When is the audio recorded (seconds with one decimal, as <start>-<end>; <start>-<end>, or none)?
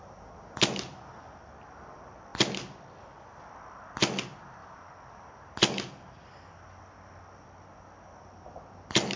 0.0-9.2